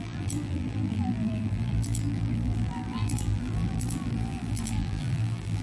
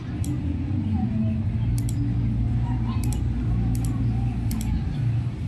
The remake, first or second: first